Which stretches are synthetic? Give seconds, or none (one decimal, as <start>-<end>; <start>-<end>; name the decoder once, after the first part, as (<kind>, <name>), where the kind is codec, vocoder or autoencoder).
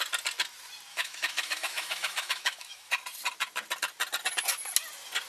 0.9-2.9 (autoencoder, DAC-VAE)